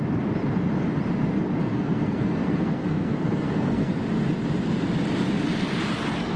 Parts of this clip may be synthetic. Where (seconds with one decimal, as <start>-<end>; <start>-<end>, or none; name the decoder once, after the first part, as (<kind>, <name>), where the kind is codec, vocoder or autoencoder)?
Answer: 1.6-3.9 (codec, SNAC)